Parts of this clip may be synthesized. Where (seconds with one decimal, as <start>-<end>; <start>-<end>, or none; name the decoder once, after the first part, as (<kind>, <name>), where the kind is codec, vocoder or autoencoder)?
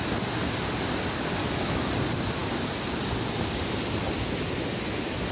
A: 1.4-1.9 (autoencoder, DAC-VAE)